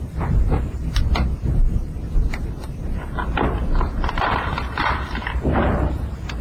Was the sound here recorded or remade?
remade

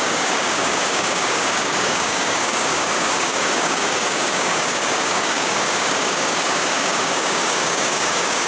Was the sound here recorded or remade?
remade